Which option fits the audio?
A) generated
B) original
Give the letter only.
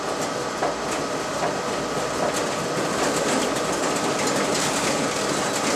B